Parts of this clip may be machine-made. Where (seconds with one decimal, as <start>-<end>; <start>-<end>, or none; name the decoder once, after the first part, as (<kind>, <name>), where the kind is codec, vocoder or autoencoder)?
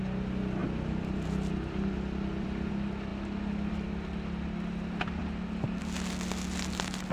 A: 0.6-2.7 (vocoder, BigVGAN v2)